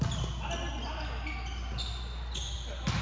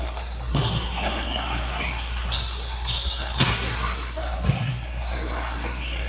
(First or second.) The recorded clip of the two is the first